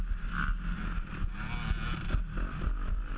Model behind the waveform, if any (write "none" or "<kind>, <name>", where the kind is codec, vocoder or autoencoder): none